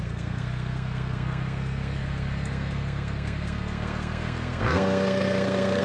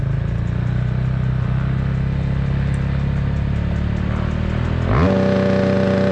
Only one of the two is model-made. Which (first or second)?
first